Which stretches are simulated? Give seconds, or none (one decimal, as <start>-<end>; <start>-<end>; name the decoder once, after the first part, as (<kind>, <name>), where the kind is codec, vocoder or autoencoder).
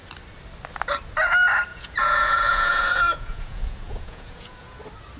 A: 1.7-4.8 (vocoder, Vocos)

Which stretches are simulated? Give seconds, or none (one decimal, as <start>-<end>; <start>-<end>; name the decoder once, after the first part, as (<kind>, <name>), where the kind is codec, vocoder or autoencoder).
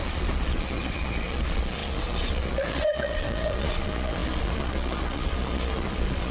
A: 0.0-6.3 (vocoder, Vocos)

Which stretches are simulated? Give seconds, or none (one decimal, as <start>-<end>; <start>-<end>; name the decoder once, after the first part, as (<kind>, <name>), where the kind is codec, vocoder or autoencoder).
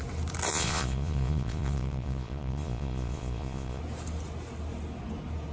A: 0.5-3.8 (vocoder, Vocos)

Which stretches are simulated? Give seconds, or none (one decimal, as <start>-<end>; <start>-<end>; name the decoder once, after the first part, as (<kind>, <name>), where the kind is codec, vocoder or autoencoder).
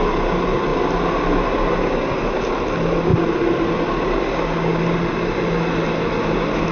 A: none